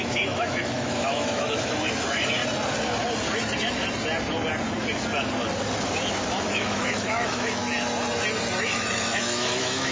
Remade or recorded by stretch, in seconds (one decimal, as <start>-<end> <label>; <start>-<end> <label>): 0.0-2.4 remade; 2.4-6.4 recorded; 6.4-7.6 remade; 7.6-8.6 recorded; 8.6-9.9 remade